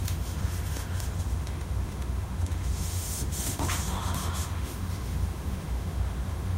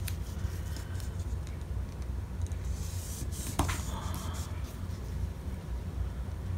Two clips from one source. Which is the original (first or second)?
second